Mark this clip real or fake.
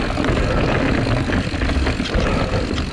real